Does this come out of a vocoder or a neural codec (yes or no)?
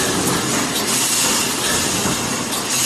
no